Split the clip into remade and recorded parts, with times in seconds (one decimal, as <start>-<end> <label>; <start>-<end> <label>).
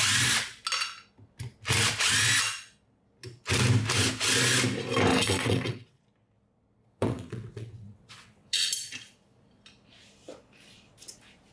0.0-5.1 recorded; 5.1-6.0 remade; 6.0-6.8 recorded; 6.8-8.7 remade; 8.7-11.5 recorded